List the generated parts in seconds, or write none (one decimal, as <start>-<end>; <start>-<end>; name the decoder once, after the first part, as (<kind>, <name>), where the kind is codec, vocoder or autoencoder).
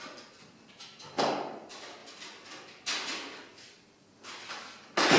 none